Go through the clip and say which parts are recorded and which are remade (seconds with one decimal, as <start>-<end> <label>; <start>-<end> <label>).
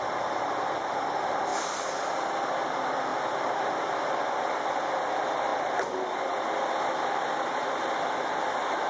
0.0-3.1 recorded; 3.1-3.8 remade; 3.8-5.5 recorded; 5.5-6.4 remade; 6.4-8.9 recorded